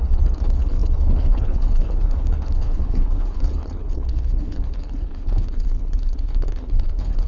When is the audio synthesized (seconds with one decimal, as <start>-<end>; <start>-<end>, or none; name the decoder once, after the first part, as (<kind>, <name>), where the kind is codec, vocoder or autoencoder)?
0.0-7.3 (codec, HILCodec)